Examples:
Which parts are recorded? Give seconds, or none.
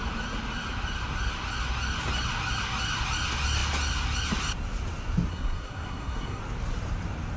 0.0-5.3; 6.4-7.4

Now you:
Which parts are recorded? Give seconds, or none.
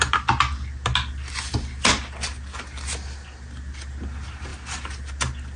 0.0-5.6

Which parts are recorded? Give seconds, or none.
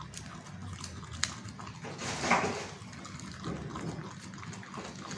0.0-5.2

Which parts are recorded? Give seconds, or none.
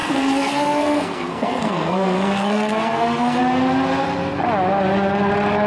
3.4-5.7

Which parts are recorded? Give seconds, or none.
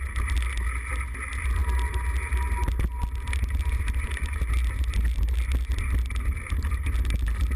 0.0-7.6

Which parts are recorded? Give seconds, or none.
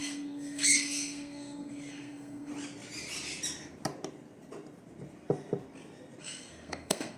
2.5-6.2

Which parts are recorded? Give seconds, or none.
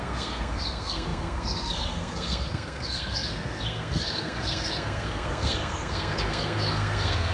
none